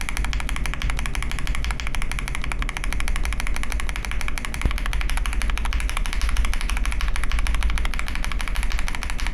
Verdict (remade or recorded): recorded